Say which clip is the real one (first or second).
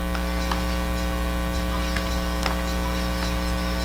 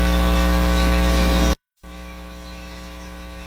first